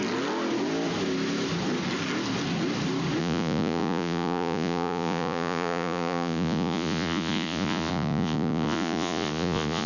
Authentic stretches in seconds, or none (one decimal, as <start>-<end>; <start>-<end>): 0.0-3.2